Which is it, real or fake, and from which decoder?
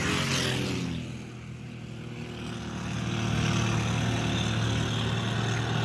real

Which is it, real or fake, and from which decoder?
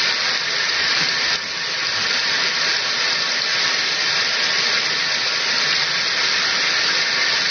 fake, vocoder, BigVGAN v2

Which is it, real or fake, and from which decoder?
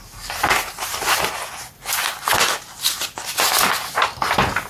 real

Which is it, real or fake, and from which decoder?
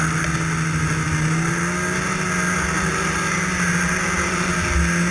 real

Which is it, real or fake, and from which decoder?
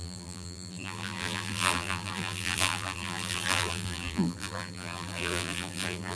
fake, vocoder, BigVGAN v2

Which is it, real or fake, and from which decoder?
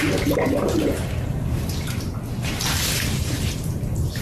fake, vocoder, BigVGAN v2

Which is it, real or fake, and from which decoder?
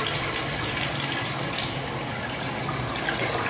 real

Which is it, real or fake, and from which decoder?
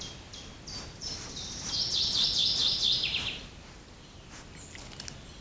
real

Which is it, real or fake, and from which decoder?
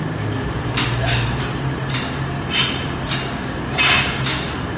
fake, vocoder, BigVGAN v2